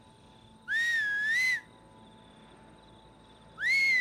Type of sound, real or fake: real